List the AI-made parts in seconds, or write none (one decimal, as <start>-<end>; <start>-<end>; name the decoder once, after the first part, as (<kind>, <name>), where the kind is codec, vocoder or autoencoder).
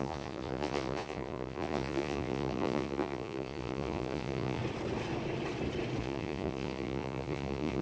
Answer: 0.0-4.6 (vocoder, Vocos); 6.0-7.8